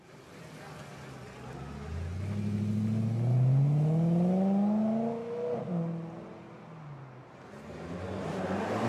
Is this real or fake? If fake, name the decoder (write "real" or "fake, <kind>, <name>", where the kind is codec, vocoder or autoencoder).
real